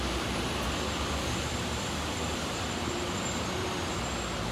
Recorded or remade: recorded